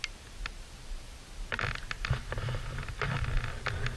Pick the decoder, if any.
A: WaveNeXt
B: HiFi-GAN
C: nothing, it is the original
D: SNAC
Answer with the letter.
C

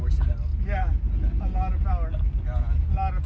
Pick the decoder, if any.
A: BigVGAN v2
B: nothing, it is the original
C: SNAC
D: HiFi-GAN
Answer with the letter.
B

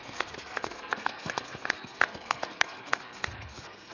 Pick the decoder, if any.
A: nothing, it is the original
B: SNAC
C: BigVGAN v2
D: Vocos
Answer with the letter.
B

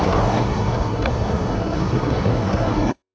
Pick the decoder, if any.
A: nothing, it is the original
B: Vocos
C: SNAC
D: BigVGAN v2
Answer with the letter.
C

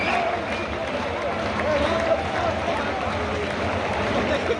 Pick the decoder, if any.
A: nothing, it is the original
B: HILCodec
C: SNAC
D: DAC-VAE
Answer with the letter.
A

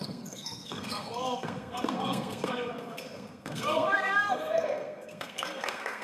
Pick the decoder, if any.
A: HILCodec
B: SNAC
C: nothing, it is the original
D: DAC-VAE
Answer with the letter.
B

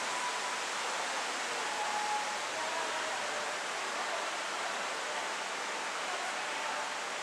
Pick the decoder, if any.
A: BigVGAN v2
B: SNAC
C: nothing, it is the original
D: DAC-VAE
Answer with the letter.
C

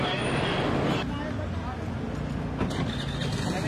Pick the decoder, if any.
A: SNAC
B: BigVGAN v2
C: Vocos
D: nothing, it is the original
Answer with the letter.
D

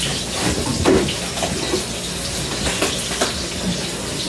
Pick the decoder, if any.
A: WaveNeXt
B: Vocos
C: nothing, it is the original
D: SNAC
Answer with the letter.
C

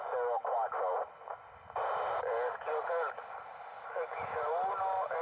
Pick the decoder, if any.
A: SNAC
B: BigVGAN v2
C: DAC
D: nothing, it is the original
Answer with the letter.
D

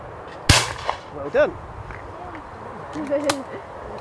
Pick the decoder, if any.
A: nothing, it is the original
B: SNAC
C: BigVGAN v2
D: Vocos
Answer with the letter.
A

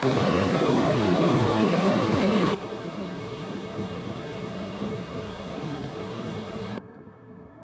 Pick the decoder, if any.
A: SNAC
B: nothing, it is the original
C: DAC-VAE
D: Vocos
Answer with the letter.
A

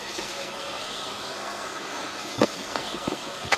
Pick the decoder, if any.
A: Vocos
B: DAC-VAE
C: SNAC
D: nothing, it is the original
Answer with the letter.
C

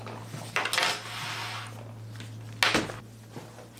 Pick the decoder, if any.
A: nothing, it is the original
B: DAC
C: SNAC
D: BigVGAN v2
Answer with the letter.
A